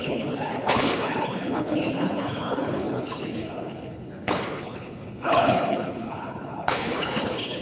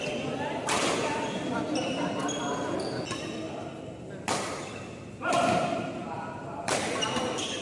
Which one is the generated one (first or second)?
first